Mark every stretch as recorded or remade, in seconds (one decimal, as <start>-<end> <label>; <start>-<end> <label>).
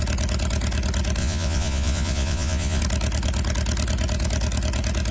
0.0-1.2 recorded; 1.2-2.8 remade; 2.8-5.1 recorded